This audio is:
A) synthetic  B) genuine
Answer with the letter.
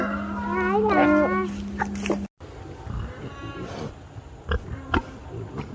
B